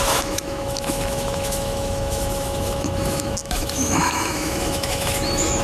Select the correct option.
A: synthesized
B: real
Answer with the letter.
A